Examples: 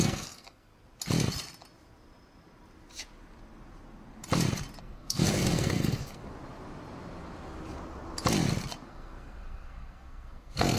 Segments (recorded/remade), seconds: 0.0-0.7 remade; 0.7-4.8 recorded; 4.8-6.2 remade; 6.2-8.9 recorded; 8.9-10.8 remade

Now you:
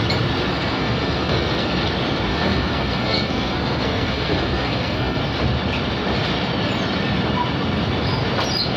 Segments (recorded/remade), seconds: 0.0-0.5 recorded; 0.5-1.9 remade; 1.9-2.3 recorded; 2.3-5.2 remade; 5.2-8.8 recorded

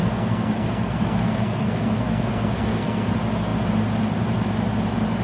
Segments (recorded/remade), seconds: 0.0-3.1 remade; 3.1-5.2 recorded

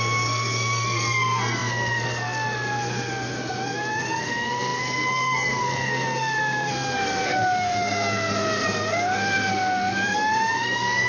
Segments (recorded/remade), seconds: 0.0-11.1 remade